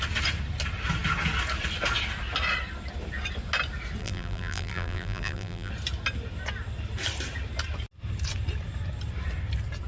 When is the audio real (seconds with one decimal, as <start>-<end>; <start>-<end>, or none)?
0.0-4.0; 5.7-9.9